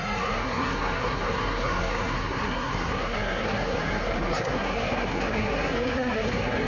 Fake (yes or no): yes